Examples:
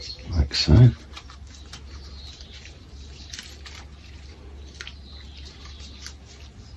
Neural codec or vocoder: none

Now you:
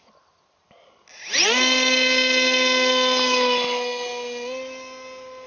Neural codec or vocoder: none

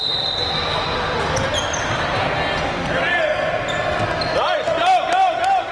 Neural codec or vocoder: none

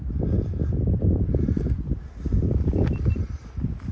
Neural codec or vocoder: none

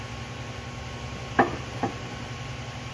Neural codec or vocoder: none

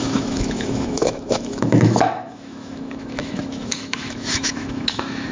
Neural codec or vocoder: autoencoder, DAC-VAE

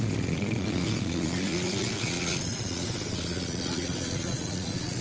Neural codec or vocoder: vocoder, Vocos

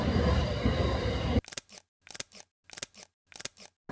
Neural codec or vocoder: none